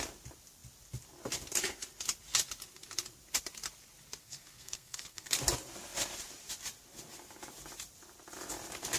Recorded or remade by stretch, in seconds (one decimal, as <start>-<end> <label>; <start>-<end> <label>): 0.0-4.2 recorded; 4.2-5.3 remade; 5.3-9.0 recorded